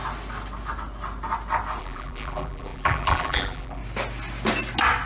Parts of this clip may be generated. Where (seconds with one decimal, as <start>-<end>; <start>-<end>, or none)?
1.8-3.8